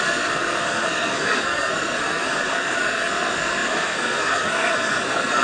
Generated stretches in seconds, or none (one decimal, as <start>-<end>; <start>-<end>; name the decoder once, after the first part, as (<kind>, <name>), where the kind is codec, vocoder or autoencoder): 0.0-5.4 (codec, SNAC)